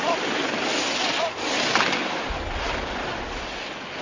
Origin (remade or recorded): recorded